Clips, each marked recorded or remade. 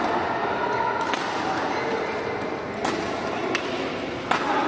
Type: recorded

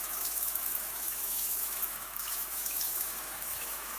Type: remade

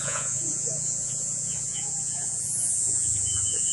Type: remade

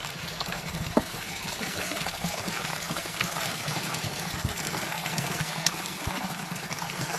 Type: remade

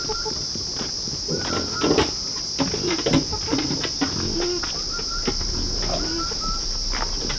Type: recorded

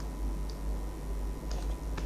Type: recorded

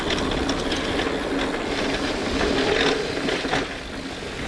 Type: recorded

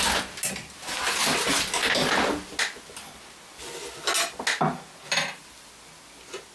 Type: recorded